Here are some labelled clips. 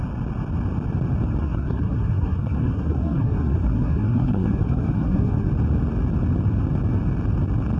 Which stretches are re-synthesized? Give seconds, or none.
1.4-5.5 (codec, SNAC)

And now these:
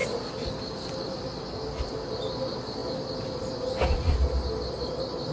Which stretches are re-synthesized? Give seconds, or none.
none